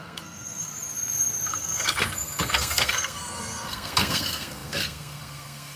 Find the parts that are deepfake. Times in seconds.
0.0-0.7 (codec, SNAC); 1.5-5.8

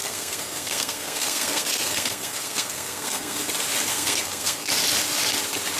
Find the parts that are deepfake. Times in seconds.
0.0-3.5 (codec, SNAC); 3.9-4.7